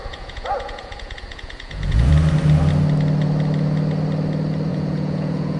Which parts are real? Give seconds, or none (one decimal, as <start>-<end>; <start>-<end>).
2.1-4.7